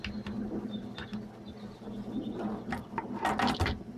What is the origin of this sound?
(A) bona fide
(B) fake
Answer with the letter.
A